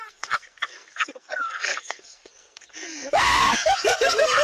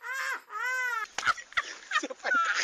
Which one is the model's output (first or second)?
first